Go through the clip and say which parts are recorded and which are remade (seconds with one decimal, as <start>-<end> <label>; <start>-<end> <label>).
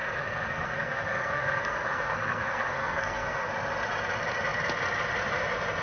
0.0-3.5 remade; 3.5-5.8 recorded